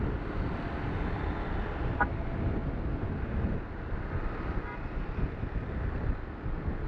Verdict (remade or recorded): recorded